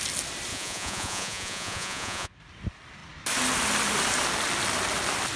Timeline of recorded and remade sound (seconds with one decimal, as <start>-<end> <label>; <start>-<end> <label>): 0.0-0.5 recorded; 0.5-2.3 remade; 2.3-5.4 recorded